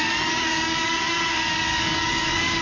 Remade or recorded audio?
remade